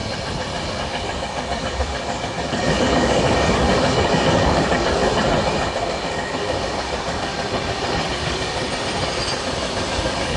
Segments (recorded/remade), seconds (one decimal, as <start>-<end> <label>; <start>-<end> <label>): 0.0-0.7 recorded; 0.7-5.0 remade; 5.0-5.8 recorded; 5.8-7.3 remade; 7.3-8.1 recorded; 8.1-8.6 remade; 8.6-10.0 recorded; 10.0-10.4 remade